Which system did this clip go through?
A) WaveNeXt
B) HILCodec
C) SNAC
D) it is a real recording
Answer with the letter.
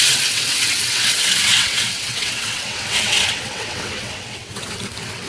A